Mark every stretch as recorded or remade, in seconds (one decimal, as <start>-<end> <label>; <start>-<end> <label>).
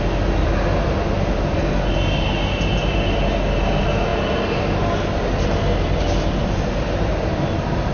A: 0.0-7.9 recorded